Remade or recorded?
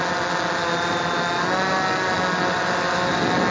recorded